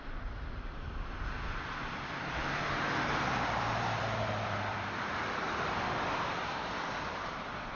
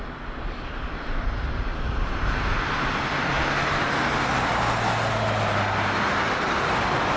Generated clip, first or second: first